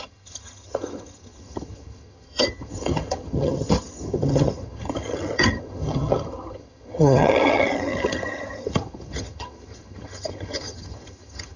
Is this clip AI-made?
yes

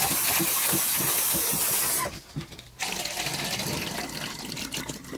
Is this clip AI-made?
no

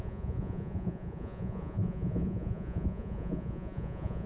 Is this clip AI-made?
yes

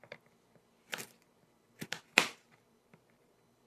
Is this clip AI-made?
yes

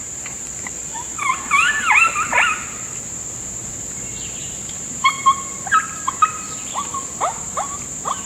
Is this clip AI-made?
yes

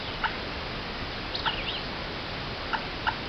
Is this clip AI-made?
no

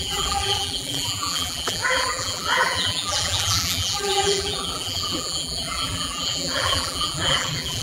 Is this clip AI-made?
yes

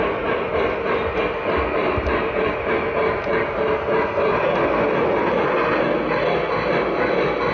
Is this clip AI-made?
no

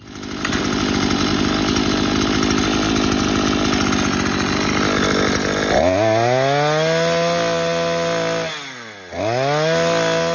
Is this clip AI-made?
no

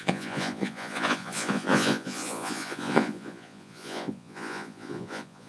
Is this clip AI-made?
yes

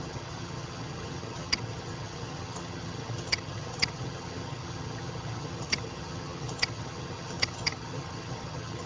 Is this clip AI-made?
yes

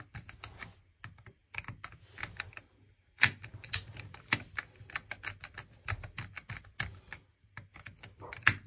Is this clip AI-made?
no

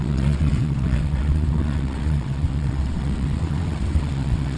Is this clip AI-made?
yes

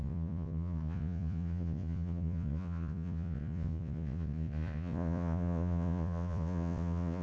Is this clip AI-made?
yes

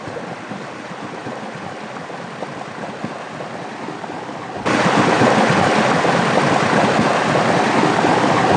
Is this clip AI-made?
no